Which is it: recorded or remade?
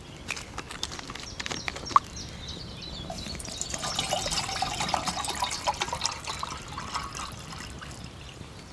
recorded